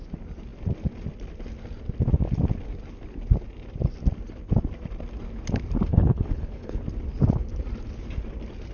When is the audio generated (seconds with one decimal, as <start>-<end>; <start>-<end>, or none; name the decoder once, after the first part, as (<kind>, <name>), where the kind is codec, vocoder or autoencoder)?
5.9-6.8 (codec, HILCodec)